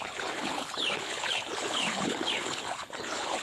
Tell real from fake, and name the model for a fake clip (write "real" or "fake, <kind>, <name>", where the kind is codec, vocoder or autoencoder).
fake, codec, HILCodec